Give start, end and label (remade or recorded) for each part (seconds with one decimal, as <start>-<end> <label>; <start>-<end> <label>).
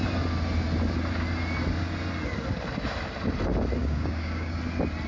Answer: 0.0-3.8 recorded; 3.8-4.6 remade; 4.6-5.1 recorded